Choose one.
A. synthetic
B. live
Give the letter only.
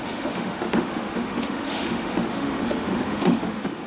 A